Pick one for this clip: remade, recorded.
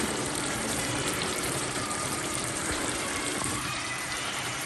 remade